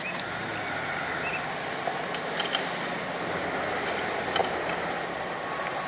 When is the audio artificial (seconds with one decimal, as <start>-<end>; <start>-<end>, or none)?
none